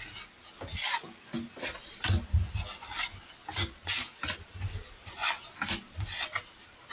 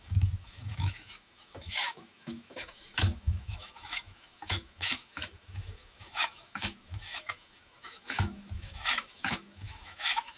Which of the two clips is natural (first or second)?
first